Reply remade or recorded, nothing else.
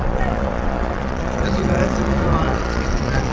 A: remade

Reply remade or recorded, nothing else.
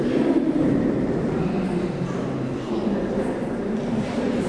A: recorded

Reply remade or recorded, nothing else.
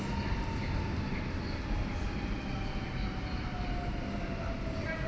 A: recorded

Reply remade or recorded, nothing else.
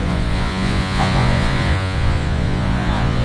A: remade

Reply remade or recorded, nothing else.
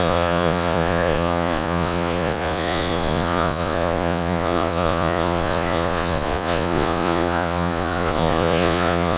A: remade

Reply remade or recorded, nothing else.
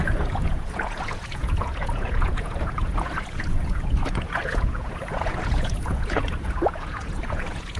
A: remade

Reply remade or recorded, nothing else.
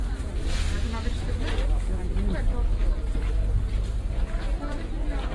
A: recorded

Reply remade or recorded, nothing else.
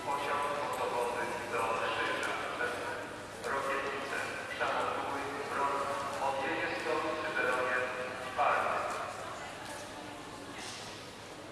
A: recorded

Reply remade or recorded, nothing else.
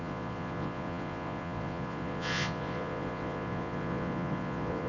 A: remade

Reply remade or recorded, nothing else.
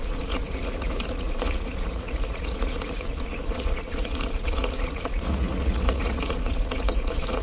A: remade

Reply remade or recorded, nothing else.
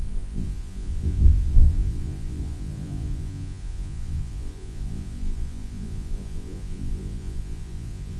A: remade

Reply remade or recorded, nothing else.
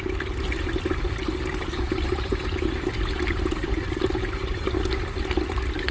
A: recorded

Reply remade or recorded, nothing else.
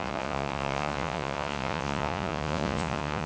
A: remade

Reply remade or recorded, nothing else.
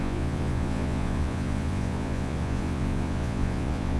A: remade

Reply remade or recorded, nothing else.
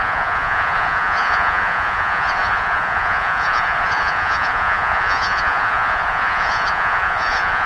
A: remade